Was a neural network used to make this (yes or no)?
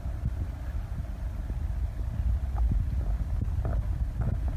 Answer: no